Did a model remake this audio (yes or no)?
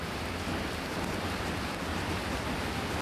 yes